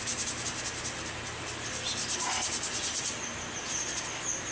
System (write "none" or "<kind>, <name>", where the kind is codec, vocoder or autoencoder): none